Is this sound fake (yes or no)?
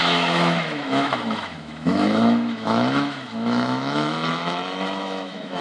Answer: yes